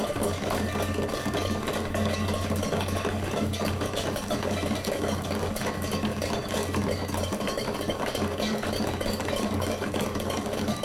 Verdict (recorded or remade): remade